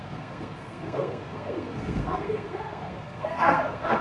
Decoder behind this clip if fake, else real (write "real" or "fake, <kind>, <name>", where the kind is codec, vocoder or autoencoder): fake, codec, SNAC